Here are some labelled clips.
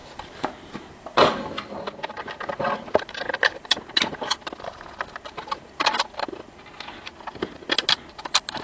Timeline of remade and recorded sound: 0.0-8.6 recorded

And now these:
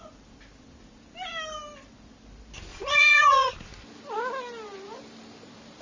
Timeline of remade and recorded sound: 0.0-2.7 recorded; 2.7-3.5 remade; 3.5-5.8 recorded

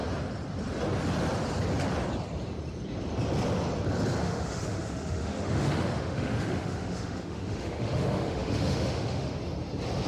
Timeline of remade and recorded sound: 0.0-4.2 recorded; 4.2-9.4 remade; 9.4-10.1 recorded